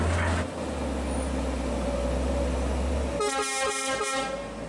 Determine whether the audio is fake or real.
real